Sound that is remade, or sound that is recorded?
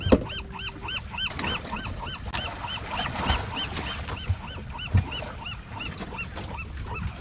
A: recorded